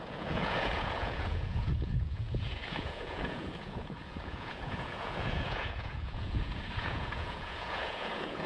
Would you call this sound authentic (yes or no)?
no